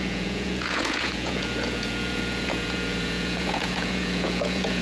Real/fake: fake